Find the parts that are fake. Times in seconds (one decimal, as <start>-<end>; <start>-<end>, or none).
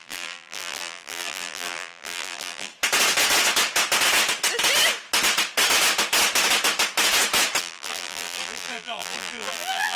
0.0-2.7; 7.6-10.0